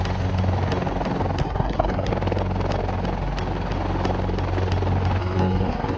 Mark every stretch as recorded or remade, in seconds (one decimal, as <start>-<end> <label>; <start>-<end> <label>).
0.0-1.4 recorded; 1.4-2.1 remade; 2.1-5.2 recorded; 5.2-6.0 remade